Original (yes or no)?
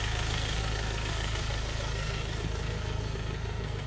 no